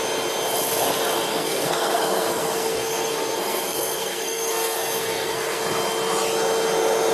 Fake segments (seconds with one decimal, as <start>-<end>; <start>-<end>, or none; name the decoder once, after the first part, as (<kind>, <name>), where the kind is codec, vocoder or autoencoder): 1.3-5.6 (codec, SNAC)